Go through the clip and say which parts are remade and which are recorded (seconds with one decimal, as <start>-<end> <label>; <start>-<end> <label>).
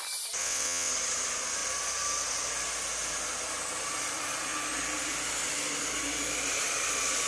0.0-0.4 recorded; 0.4-0.9 remade; 0.9-7.3 recorded